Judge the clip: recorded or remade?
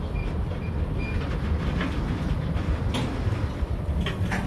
recorded